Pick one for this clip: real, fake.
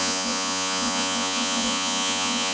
fake